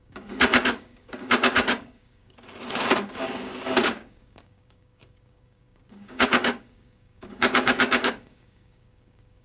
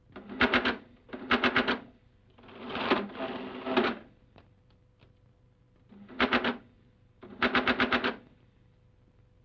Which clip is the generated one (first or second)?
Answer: first